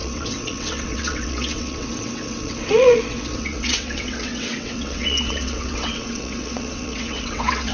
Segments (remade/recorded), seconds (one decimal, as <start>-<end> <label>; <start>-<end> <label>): 0.0-7.7 remade

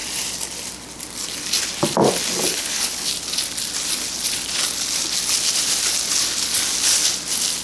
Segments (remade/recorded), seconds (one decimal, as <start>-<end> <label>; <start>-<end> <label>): 0.0-2.5 recorded; 2.5-3.1 remade; 3.1-7.6 recorded